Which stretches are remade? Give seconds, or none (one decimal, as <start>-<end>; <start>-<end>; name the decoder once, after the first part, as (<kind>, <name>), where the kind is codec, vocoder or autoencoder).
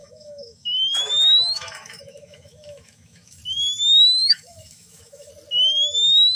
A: 0.0-3.4 (autoencoder, DAC-VAE); 4.3-5.3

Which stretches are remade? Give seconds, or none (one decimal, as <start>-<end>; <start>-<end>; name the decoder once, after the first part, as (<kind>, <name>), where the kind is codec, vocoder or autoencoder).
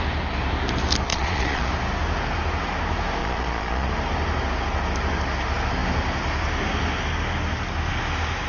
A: 1.1-1.7 (vocoder, Vocos); 3.2-3.9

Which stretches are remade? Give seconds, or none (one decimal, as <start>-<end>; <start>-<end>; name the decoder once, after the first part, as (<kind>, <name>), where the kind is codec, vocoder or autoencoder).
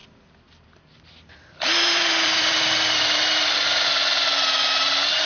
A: 0.0-3.2 (vocoder, BigVGAN v2)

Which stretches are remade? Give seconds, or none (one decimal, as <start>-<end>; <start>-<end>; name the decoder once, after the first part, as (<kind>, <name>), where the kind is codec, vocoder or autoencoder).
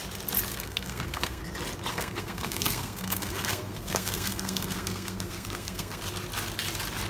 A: 0.5-1.4 (codec, SNAC); 1.9-6.0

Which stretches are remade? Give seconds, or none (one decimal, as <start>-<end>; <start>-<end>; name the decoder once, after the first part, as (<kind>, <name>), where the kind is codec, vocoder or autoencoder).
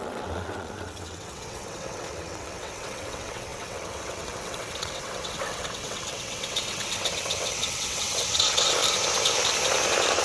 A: 0.0-8.8 (vocoder, WaveNeXt)